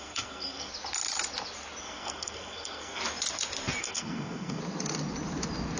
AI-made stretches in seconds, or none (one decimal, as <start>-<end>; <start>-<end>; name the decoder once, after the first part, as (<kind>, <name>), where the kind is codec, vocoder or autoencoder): 0.0-0.7 (codec, SNAC); 1.8-3.0; 3.8-4.6